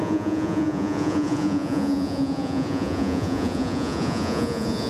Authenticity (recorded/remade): remade